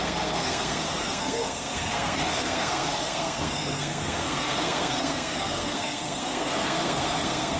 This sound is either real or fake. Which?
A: fake